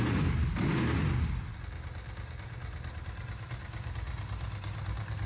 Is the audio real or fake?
real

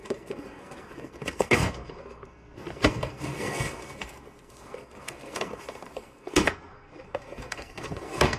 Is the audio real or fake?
fake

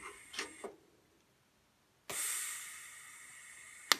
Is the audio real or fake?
real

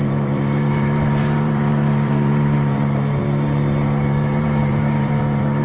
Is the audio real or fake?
fake